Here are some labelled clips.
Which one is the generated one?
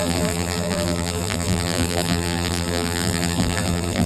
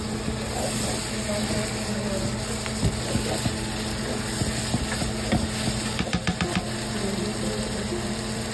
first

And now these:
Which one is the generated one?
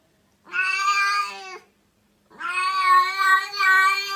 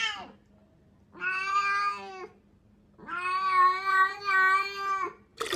first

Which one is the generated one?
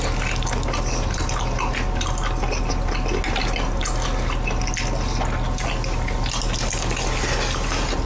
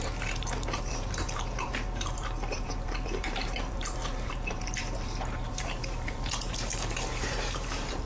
second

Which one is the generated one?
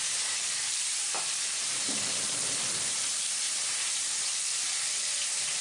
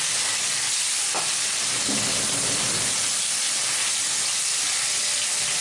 first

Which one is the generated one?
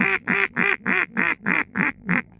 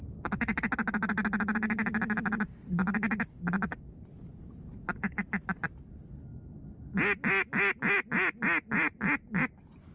first